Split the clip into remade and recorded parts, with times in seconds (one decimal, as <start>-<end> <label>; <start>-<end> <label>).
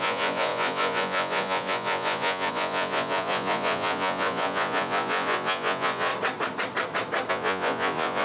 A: 0.0-6.1 remade; 6.1-7.3 recorded; 7.3-8.2 remade